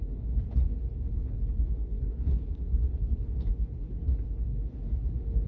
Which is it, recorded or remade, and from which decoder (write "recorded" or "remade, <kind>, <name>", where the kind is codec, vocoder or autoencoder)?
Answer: remade, codec, HILCodec